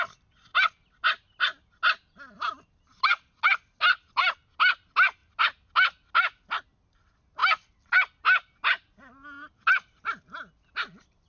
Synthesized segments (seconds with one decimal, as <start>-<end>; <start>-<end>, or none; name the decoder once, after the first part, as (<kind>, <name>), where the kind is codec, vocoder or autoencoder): none